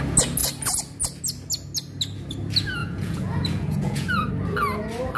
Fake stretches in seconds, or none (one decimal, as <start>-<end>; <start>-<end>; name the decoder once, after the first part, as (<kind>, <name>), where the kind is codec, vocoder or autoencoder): 2.8-4.3 (vocoder, Vocos)